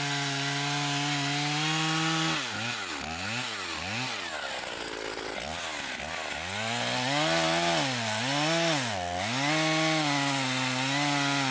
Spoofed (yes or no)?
no